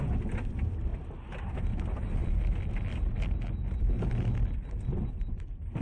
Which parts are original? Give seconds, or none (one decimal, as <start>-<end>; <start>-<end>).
0.0-5.8